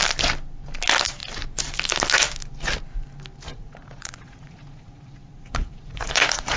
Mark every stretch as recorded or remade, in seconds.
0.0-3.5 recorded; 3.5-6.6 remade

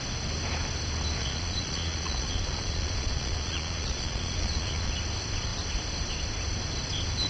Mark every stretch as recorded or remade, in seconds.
0.0-1.2 recorded; 1.2-4.9 remade; 4.9-7.3 recorded

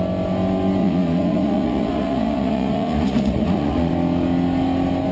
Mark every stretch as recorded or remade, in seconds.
0.0-0.8 recorded; 0.8-3.9 remade; 3.9-5.1 recorded

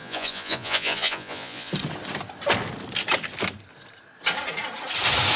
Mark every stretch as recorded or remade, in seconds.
0.0-1.7 remade; 1.7-5.4 recorded

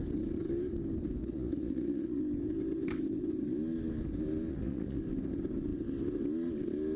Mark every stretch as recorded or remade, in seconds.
0.0-1.2 recorded; 1.2-2.2 remade; 2.2-4.5 recorded; 4.5-5.0 remade; 5.0-7.0 recorded

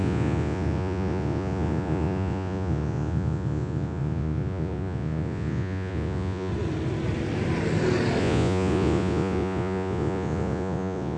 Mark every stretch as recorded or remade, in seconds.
0.0-6.5 remade; 6.5-8.2 recorded; 8.2-11.2 remade

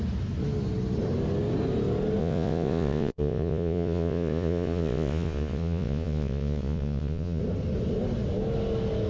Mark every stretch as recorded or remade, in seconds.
0.0-2.2 recorded; 2.2-7.4 remade; 7.4-9.1 recorded

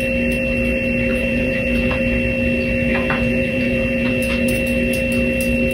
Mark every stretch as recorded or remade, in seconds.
0.0-1.1 recorded; 1.1-2.0 remade; 2.0-2.9 recorded; 2.9-4.5 remade; 4.5-5.7 recorded